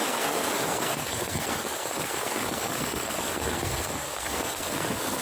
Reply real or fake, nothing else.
fake